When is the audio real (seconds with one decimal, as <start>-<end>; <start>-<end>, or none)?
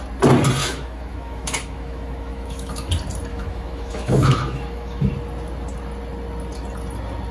0.0-0.6; 2.9-3.3; 5.1-7.3